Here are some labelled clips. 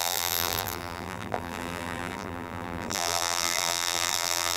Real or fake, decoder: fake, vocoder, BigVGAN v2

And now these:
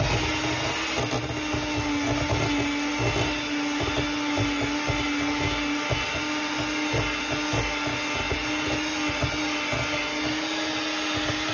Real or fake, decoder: real